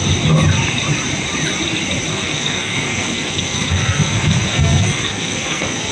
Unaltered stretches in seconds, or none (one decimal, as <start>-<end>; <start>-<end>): 0.0-2.1